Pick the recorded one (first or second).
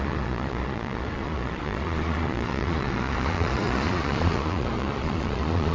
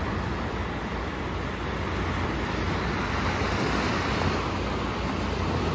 second